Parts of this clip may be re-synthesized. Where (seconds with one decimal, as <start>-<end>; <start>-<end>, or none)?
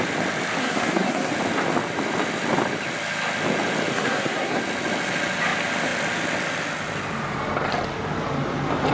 0.6-1.3; 3.9-4.6